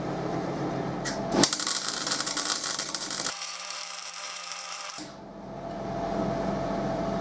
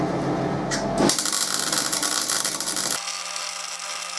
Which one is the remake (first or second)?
first